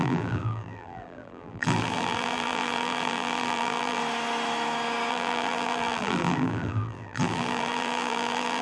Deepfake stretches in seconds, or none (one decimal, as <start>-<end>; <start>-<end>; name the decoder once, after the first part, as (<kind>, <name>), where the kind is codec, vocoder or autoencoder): 0.0-4.0 (vocoder, BigVGAN v2); 5.1-8.6

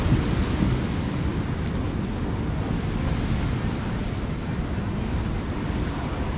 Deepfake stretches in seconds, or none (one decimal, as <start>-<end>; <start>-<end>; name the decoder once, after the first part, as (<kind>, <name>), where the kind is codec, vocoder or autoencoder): none

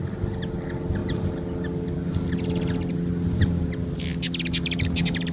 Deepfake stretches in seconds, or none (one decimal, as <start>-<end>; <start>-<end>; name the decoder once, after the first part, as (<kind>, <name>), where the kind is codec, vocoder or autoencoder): none

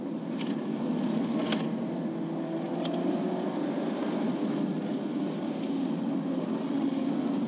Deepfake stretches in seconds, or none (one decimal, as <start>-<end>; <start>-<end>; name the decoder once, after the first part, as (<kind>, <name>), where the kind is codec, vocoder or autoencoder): 6.6-7.1 (autoencoder, DAC-VAE)

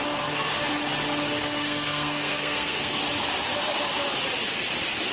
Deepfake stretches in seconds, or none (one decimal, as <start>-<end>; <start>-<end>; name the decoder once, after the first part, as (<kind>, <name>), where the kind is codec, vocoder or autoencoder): 1.4-3.0 (codec, SNAC)

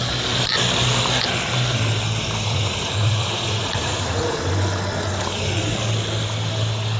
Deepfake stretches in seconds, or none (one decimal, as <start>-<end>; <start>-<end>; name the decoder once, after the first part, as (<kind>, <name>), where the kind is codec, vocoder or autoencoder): 2.4-4.5 (vocoder, Vocos)